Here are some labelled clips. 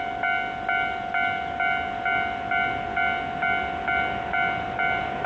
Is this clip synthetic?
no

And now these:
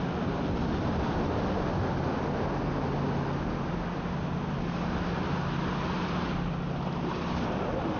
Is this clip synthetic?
no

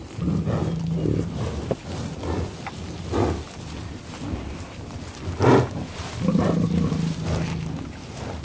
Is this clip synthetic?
no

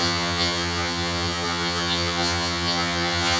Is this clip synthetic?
yes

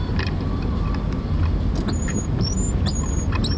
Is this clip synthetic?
no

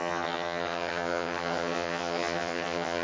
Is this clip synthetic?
yes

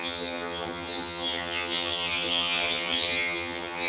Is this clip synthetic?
yes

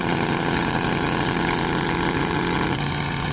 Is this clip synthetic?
yes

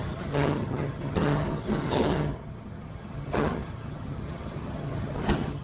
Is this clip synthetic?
yes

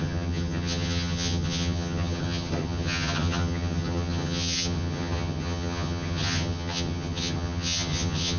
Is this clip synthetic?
yes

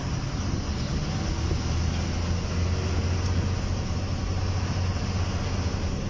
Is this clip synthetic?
no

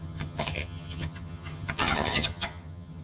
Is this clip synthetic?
yes